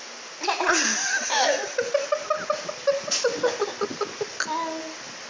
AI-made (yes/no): no